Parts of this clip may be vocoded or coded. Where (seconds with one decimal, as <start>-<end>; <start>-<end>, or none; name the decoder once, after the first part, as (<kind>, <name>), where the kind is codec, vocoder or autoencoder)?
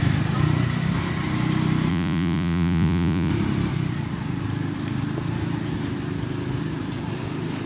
1.9-3.3 (vocoder, Vocos)